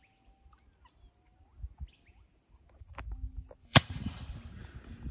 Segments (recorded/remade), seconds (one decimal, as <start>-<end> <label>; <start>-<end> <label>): 0.0-3.6 recorded; 3.6-4.2 remade; 4.2-5.1 recorded